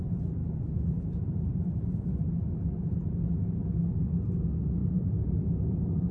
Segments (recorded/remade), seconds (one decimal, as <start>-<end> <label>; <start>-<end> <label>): 0.0-0.4 recorded; 0.4-2.4 remade; 2.4-4.8 recorded; 4.8-5.4 remade; 5.4-6.1 recorded